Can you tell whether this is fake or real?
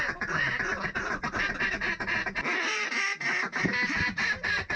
real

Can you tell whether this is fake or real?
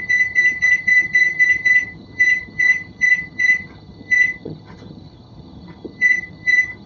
fake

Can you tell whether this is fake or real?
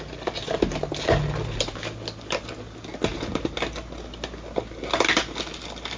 real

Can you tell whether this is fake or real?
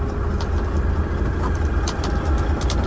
real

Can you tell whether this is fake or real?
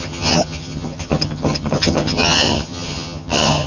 fake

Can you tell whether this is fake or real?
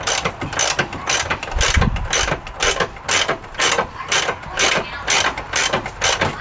real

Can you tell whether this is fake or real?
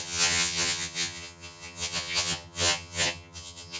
fake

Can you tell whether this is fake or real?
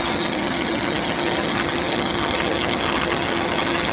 fake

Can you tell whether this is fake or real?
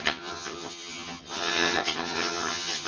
fake